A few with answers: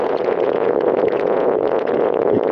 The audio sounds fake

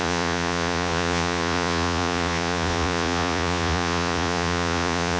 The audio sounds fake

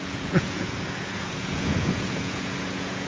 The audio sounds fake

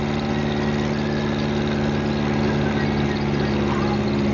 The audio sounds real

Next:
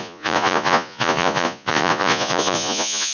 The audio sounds fake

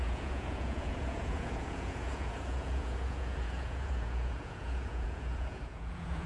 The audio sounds fake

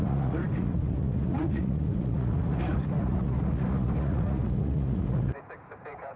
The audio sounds fake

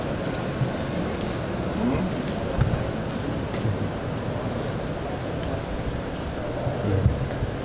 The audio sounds real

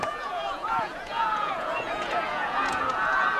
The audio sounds fake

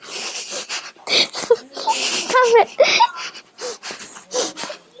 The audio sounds real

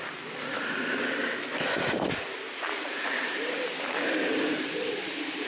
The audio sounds real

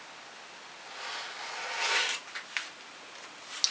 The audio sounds real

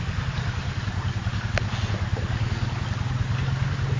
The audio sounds real